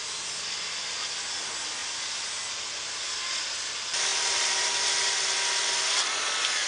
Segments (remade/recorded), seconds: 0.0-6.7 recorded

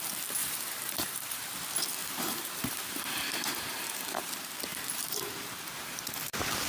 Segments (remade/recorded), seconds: 0.0-0.4 recorded; 0.4-1.4 remade; 1.4-2.0 recorded; 2.0-6.0 remade; 6.0-6.7 recorded

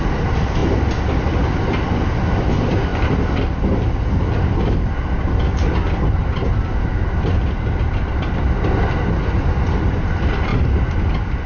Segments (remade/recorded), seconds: 0.0-11.5 recorded

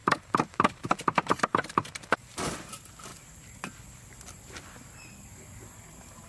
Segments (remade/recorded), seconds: 0.0-2.1 remade; 2.1-6.3 recorded

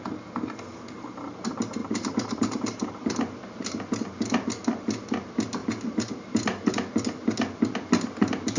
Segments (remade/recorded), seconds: 0.0-1.8 recorded; 1.8-4.0 remade; 4.0-5.6 recorded; 5.6-6.7 remade; 6.7-8.6 recorded

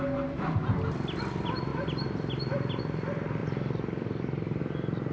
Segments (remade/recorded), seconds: 0.0-1.7 recorded; 1.7-2.8 remade; 2.8-3.4 recorded; 3.4-4.6 remade; 4.6-5.1 recorded

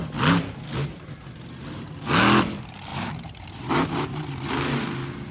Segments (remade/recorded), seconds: 0.0-2.9 recorded; 2.9-3.7 remade; 3.7-5.3 recorded